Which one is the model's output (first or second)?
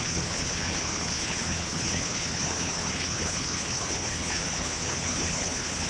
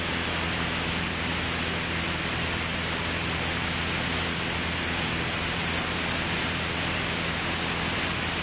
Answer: first